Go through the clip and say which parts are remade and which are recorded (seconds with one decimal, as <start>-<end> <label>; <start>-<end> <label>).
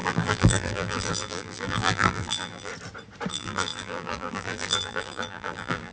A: 0.0-2.7 remade; 2.7-3.3 recorded; 3.3-5.9 remade